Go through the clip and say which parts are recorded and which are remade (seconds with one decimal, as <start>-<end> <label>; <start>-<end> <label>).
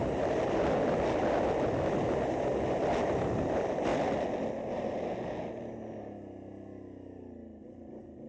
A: 0.0-8.3 recorded